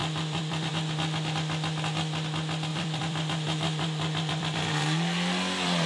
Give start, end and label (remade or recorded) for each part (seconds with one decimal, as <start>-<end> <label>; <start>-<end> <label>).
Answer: 0.0-0.7 remade; 0.7-2.7 recorded; 2.7-5.9 remade